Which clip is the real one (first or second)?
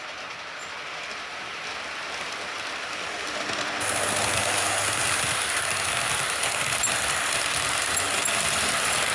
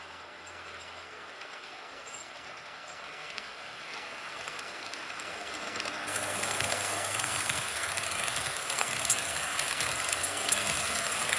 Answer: first